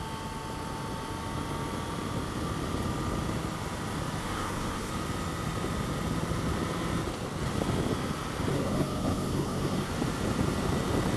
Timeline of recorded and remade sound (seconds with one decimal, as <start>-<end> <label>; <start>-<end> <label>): 0.0-4.2 recorded; 4.2-4.9 remade; 4.9-8.5 recorded; 8.5-9.9 remade; 9.9-11.2 recorded